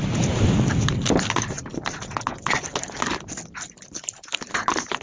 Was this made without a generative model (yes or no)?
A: yes